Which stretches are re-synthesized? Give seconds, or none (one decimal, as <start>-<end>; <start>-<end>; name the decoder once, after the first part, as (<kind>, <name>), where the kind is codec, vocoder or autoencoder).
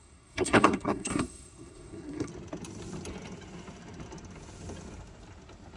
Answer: 0.0-2.3 (codec, SNAC)